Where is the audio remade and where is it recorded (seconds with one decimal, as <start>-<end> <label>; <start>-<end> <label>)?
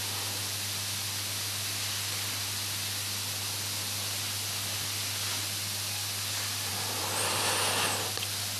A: 0.0-6.7 recorded; 6.7-7.4 remade; 7.4-8.6 recorded